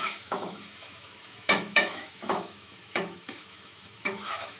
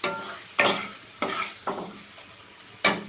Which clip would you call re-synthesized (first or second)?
first